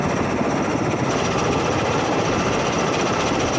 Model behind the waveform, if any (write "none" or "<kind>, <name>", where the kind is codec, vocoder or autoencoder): none